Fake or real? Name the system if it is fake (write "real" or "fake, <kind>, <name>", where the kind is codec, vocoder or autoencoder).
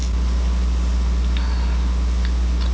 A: real